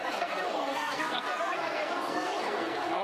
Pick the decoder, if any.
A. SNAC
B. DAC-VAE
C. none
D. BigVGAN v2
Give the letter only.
A